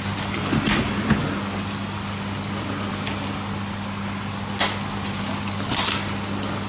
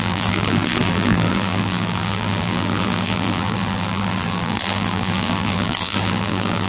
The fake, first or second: second